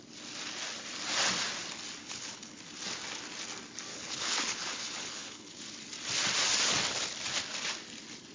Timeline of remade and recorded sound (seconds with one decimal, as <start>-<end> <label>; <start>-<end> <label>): 0.0-2.0 recorded; 2.0-2.6 remade; 2.6-3.9 recorded; 3.9-5.6 remade; 5.6-8.3 recorded